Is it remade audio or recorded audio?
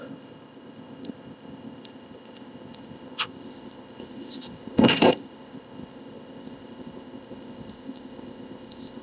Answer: remade